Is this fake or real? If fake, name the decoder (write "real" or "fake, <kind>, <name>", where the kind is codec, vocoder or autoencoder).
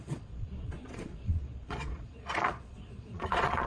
fake, vocoder, Vocos